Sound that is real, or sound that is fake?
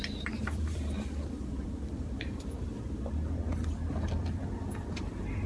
fake